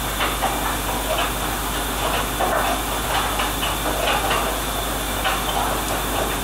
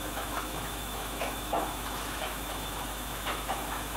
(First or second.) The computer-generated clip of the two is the second